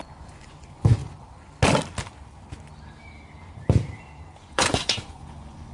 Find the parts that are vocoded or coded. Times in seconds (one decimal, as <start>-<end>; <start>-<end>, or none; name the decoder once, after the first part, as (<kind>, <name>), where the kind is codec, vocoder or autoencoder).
0.0-1.0 (vocoder, Vocos); 4.4-5.7